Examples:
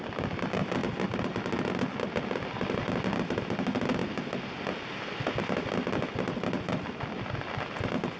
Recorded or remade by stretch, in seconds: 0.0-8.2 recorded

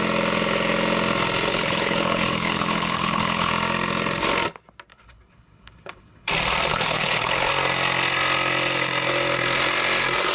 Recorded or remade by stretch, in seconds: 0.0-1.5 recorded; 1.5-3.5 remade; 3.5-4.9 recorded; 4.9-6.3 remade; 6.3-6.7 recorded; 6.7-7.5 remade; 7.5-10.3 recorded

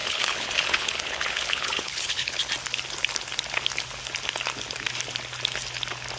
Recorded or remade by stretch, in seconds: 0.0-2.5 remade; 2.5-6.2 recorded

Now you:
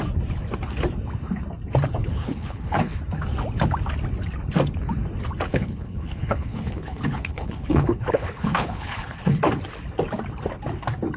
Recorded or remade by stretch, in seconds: 0.0-2.0 recorded; 2.0-3.0 remade; 3.0-5.5 recorded; 5.5-9.4 remade; 9.4-11.2 recorded

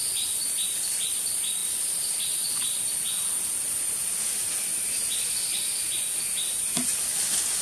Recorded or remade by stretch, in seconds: 0.0-7.6 recorded

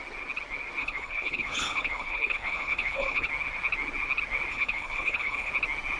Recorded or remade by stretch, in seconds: 0.0-0.8 recorded; 0.8-3.3 remade; 3.3-4.5 recorded; 4.5-5.5 remade; 5.5-6.0 recorded

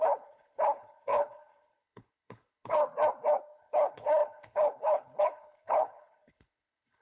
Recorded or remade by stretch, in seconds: 0.0-2.8 remade; 2.8-3.4 recorded; 3.4-7.0 remade

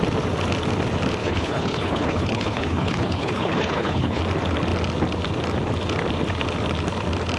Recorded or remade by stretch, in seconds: 0.0-1.2 recorded; 1.2-4.2 remade; 4.2-7.4 recorded